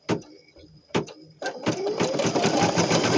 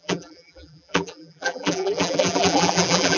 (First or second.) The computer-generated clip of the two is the second